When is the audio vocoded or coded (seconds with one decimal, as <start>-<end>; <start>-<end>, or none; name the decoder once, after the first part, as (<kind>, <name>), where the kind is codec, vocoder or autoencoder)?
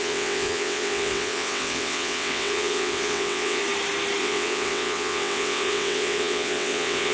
0.0-3.6 (vocoder, WaveNeXt); 4.2-7.1